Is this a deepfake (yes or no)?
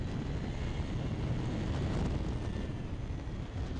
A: no